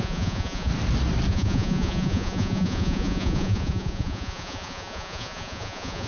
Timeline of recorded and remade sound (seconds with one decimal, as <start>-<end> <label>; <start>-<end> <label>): 0.0-0.7 remade; 0.7-1.3 recorded; 1.3-6.1 remade